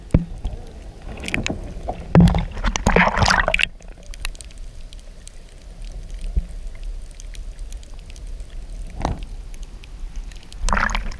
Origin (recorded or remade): recorded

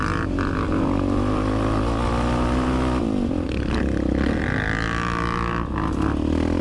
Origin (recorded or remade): recorded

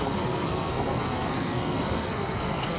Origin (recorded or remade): remade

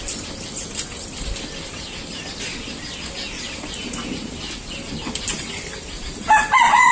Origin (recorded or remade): recorded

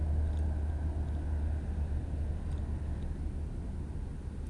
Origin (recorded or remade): recorded